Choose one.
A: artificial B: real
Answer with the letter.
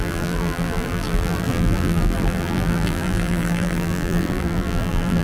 A